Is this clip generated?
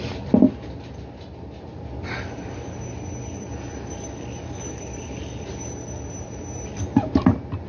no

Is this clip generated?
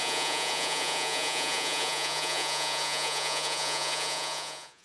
yes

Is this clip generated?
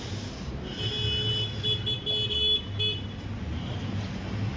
no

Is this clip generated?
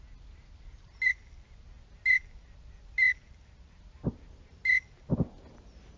no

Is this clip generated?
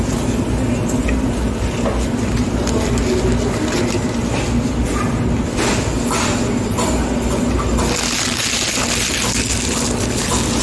no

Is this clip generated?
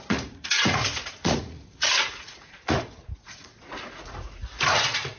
yes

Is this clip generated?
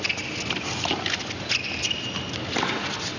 no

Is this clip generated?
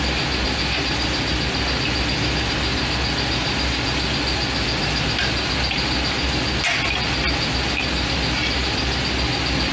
no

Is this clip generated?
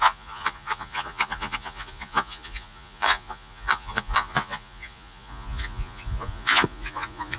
yes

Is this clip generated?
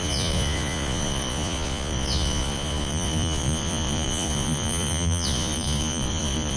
yes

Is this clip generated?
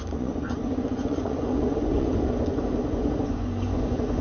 yes